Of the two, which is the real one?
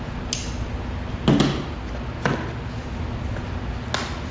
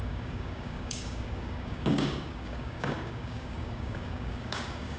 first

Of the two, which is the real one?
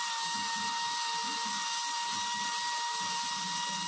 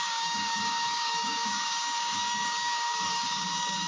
first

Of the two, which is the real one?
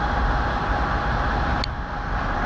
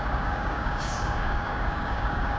first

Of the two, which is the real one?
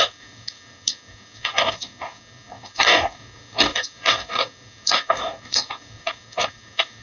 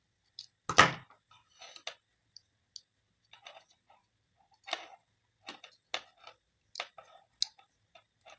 second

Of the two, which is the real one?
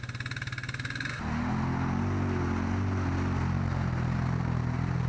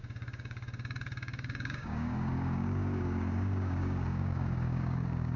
first